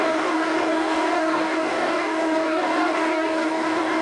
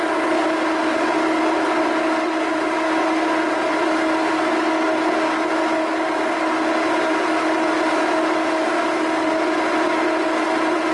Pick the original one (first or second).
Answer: second